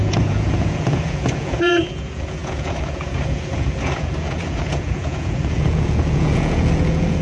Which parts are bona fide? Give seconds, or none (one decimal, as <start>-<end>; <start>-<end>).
none